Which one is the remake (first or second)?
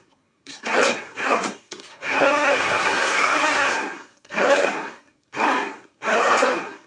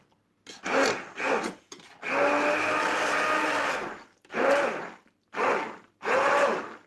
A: first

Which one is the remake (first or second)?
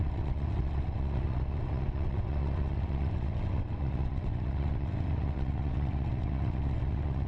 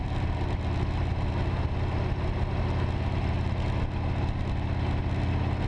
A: first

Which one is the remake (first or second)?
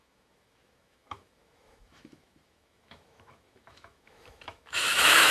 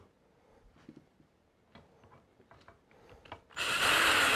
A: first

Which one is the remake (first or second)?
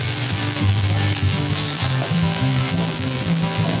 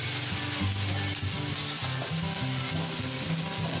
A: first